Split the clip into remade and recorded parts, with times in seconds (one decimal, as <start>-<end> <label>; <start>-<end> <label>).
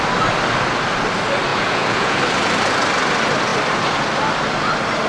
0.0-1.5 recorded; 1.5-2.2 remade; 2.2-5.1 recorded